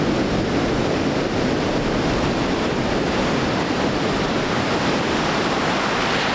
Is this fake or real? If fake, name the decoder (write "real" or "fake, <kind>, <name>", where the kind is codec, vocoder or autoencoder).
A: real